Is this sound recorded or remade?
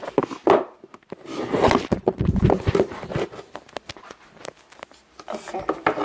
recorded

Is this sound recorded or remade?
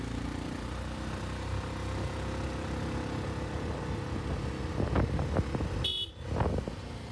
recorded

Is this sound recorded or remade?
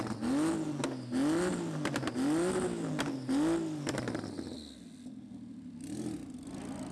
recorded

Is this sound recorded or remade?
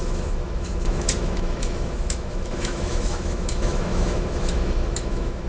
remade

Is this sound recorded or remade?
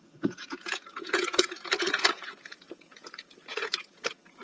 remade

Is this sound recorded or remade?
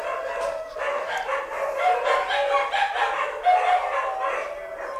recorded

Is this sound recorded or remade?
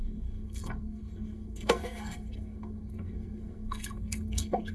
remade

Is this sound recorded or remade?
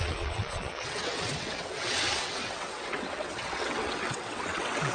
remade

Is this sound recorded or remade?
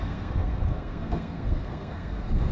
remade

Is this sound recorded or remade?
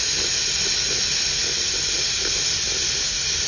recorded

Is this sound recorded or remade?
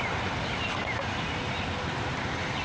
recorded